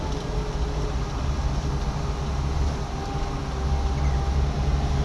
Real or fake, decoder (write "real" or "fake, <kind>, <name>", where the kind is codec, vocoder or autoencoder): real